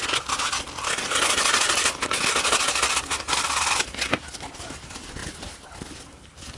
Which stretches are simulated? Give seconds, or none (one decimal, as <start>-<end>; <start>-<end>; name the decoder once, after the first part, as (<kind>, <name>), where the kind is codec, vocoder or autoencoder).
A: 0.0-6.6 (vocoder, BigVGAN v2)